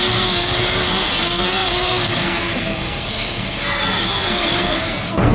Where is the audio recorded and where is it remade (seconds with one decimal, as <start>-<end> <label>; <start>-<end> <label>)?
0.0-5.3 remade